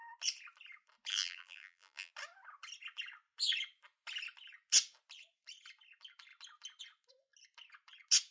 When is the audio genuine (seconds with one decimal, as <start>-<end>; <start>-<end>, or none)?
0.0-1.1; 2.1-8.3

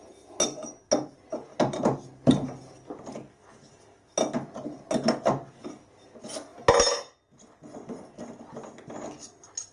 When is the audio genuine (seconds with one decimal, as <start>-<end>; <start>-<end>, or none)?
0.0-9.7

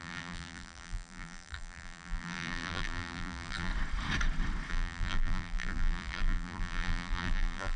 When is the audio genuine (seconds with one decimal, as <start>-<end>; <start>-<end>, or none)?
3.7-4.7

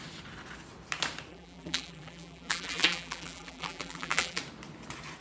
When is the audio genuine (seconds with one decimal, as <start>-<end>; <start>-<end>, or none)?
0.0-1.3; 4.4-5.2

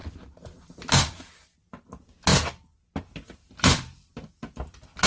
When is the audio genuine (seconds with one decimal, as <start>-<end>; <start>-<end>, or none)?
1.6-3.4; 4.1-5.1